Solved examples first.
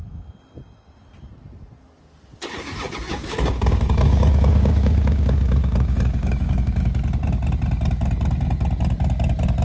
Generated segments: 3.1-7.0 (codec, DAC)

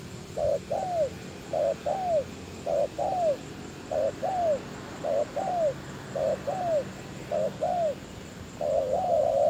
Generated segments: none

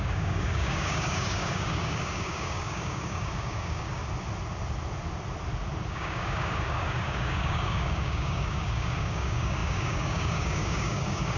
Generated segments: 0.0-4.0 (codec, DAC); 5.9-11.4

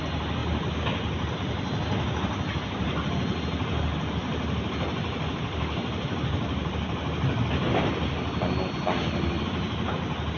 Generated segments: none

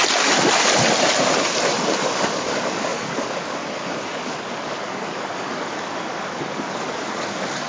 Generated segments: 2.0-7.7 (codec, DAC)

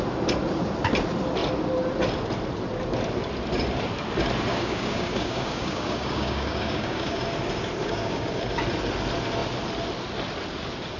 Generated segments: 4.5-7.2 (codec, DAC); 7.8-8.4

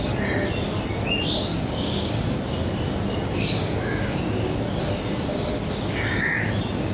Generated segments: 1.5-2.4 (codec, DAC); 3.5-4.2; 4.8-6.3